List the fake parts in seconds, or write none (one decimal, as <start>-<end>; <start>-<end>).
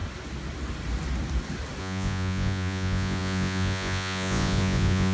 1.8-5.1